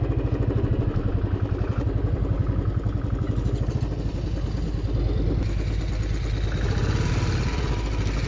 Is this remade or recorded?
recorded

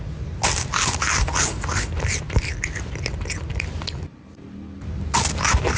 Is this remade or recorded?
recorded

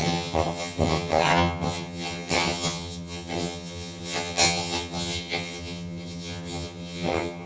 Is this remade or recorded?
remade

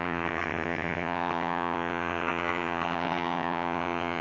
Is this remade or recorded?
remade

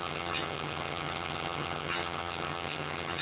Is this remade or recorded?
remade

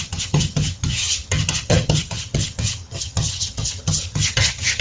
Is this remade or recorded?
remade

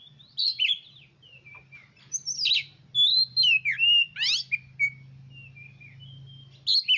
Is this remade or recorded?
recorded